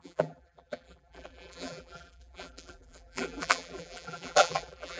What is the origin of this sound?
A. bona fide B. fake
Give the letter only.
B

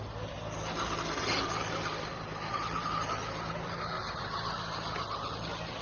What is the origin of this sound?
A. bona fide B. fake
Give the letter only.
A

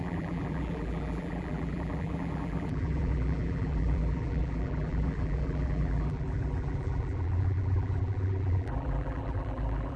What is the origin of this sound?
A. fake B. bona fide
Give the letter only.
A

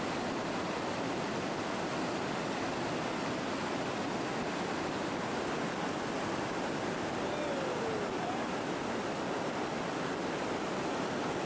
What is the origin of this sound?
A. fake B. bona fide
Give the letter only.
B